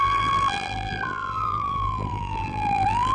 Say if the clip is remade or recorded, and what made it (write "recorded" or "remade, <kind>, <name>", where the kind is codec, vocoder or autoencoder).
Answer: remade, vocoder, BigVGAN v2